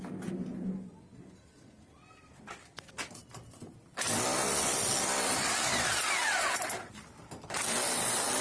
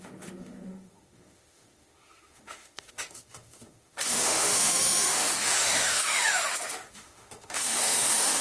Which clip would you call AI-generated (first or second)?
second